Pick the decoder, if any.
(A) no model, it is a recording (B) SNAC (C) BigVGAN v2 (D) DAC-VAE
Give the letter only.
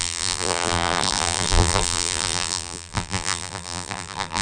C